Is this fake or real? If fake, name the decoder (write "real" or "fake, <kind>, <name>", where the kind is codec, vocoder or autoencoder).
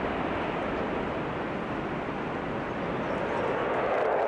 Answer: real